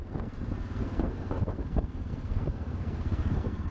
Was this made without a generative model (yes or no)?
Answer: no